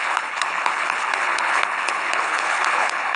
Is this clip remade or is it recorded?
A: remade